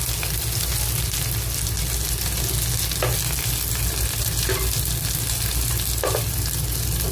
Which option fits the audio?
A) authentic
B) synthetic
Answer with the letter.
A